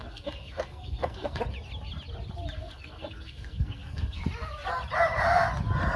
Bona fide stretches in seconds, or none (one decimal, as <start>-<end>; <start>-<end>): 1.4-2.6; 4.2-6.0